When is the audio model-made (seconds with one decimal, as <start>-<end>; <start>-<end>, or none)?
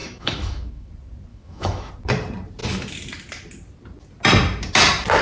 0.0-0.9; 1.3-1.9